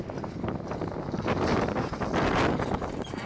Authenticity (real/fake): real